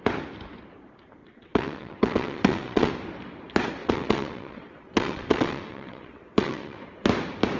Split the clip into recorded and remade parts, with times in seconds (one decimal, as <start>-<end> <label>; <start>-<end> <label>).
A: 0.0-1.2 recorded; 1.2-2.9 remade; 2.9-3.8 recorded; 3.8-6.8 remade; 6.8-7.6 recorded